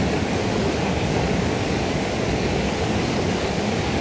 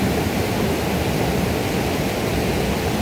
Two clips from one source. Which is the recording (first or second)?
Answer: second